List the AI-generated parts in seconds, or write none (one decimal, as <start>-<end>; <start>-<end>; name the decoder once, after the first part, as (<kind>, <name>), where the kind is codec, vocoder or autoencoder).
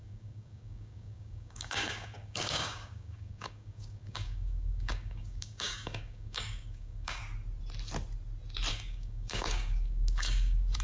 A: 0.0-7.2 (codec, DAC); 8.7-10.8